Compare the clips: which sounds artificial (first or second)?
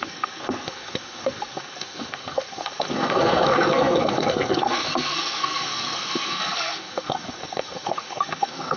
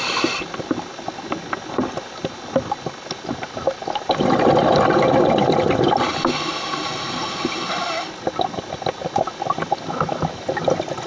first